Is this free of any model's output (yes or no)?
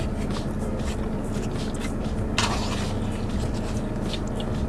yes